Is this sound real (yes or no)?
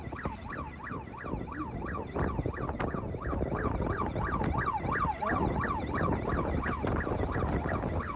yes